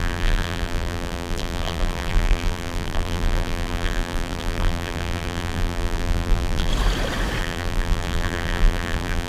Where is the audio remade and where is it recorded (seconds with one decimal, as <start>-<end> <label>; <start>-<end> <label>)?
0.0-6.7 remade; 6.7-7.4 recorded; 7.4-9.3 remade